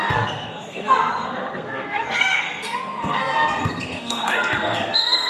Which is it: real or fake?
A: fake